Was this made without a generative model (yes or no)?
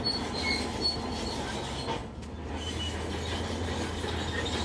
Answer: yes